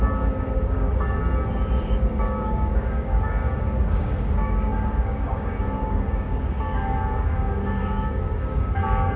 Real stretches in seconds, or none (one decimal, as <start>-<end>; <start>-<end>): 1.2-2.1

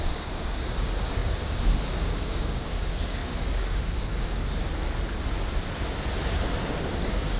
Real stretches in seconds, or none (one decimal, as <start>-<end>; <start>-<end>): 4.6-7.0

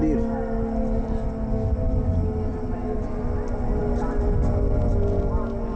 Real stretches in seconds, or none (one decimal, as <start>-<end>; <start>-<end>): 0.0-5.8

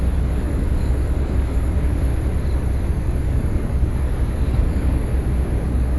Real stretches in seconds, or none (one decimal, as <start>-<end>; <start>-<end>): 2.1-2.9; 5.1-5.6

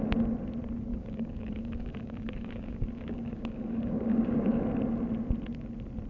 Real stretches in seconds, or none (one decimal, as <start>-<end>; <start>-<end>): 0.0-0.9; 4.6-6.1

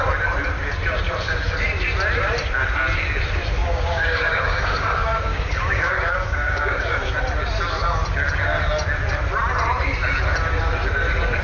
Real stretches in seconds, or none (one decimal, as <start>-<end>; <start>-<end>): 0.0-3.6; 7.1-11.4

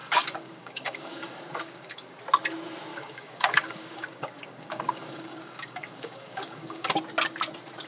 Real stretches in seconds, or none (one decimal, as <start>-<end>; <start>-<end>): 2.2-2.9; 6.9-7.9